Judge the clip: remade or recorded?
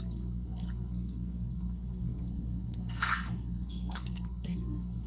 remade